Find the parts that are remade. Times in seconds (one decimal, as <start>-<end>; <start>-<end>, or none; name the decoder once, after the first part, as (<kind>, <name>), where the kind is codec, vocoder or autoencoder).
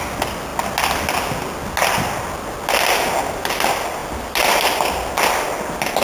none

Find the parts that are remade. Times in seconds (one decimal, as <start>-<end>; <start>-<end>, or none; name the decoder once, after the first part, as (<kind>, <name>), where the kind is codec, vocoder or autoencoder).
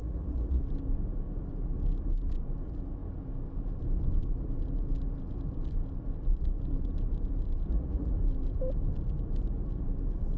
0.0-0.6 (vocoder, Vocos); 7.7-8.2